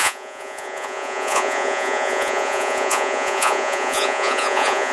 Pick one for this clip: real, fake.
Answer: fake